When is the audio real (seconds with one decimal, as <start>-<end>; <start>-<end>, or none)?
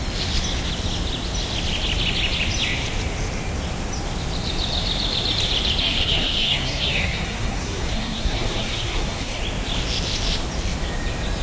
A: 0.0-5.8; 9.4-11.4